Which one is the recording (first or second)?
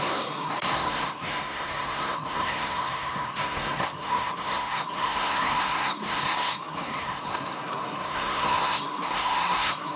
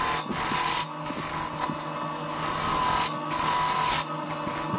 second